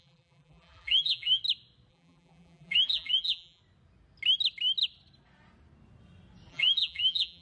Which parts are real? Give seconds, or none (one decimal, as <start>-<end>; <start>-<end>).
1.4-1.9; 3.6-6.5